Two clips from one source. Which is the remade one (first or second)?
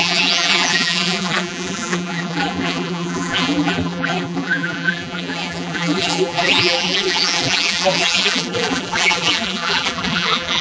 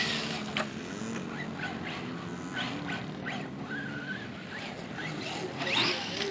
first